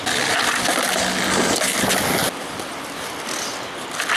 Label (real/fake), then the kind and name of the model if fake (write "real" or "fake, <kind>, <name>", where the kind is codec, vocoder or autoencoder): real